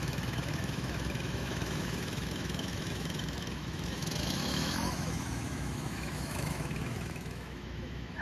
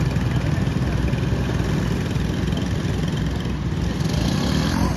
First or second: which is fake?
first